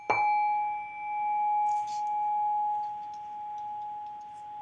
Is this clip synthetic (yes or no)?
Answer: no